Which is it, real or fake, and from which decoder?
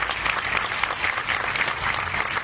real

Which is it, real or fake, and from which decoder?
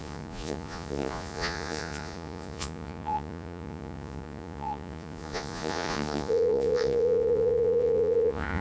fake, vocoder, Vocos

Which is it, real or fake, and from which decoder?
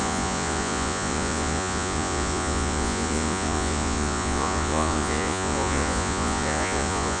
fake, vocoder, Vocos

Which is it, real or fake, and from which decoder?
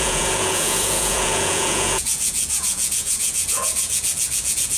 fake, vocoder, Vocos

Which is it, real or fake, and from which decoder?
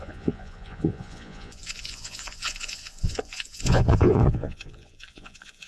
fake, vocoder, Vocos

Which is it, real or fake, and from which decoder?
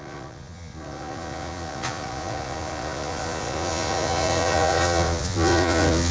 fake, vocoder, Vocos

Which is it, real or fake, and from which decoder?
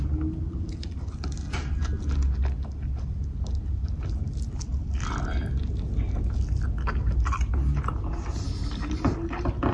real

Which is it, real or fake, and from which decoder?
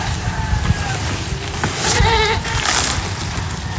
real